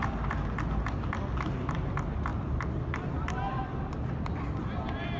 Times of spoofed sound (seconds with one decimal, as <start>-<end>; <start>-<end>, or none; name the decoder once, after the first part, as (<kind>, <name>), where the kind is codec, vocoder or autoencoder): none